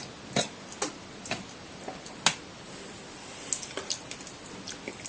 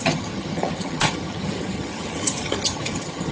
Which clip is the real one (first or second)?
first